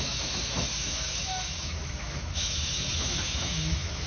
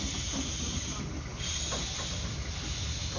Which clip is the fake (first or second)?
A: first